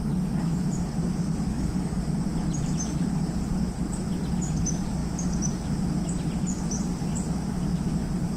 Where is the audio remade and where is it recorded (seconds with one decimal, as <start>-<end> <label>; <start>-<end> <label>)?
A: 0.0-1.5 recorded; 1.5-2.0 remade; 2.0-8.4 recorded